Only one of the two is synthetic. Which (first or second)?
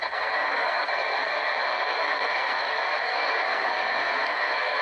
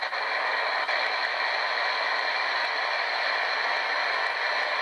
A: first